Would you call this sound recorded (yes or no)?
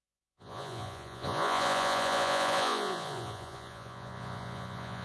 no